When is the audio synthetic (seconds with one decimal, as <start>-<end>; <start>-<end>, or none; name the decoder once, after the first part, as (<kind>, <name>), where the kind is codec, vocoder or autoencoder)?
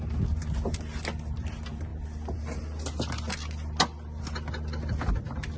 none